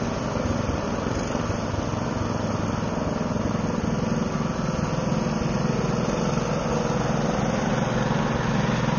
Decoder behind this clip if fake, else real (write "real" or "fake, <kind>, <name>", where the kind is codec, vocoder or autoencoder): real